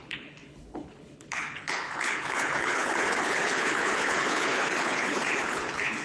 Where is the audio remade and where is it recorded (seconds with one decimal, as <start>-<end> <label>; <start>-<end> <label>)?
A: 0.0-6.0 remade